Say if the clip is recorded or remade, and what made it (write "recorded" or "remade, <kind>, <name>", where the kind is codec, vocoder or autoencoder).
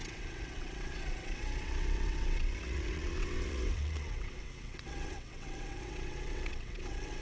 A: remade, vocoder, WaveNeXt